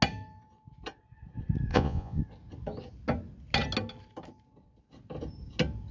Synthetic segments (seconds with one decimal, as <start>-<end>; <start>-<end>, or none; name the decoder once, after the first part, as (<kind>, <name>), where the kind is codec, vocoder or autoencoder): 1.7-2.2 (vocoder, Vocos)